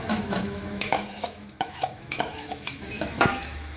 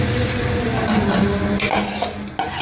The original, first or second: second